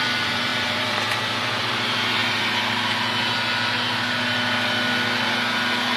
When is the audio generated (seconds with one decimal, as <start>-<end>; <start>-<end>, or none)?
0.0-2.2